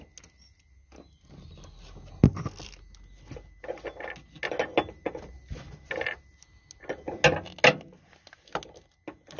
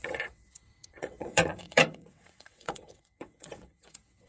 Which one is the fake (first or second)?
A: second